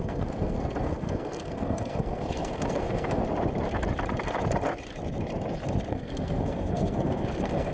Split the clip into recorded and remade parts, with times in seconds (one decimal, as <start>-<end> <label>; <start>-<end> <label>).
0.0-3.2 remade; 3.2-5.9 recorded; 5.9-7.7 remade